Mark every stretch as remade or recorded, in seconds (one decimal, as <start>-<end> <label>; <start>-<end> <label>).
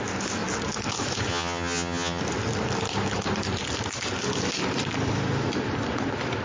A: 0.0-1.3 recorded; 1.3-2.2 remade; 2.2-6.4 recorded